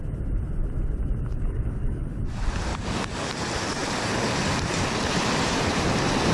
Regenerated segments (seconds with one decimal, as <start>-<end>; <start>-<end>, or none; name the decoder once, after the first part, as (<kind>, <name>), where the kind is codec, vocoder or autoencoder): 1.3-2.2 (codec, DAC); 2.7-3.3